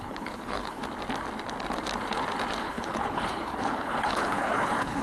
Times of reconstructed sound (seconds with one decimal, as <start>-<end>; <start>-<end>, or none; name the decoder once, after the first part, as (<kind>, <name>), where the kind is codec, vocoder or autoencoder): 0.0-0.8 (codec, HILCodec); 2.6-5.0